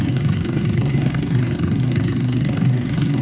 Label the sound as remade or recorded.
remade